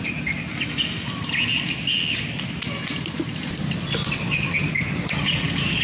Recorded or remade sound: recorded